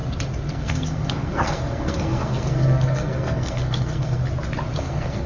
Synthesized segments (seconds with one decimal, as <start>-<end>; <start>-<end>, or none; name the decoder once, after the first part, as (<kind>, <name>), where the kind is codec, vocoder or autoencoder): 0.5-4.2 (codec, SNAC); 4.8-5.3